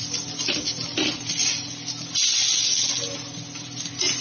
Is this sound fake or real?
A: real